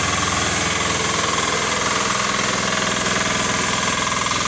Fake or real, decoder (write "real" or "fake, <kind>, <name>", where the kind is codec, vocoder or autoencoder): real